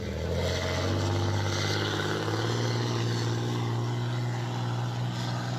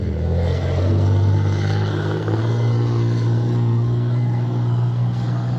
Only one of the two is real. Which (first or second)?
first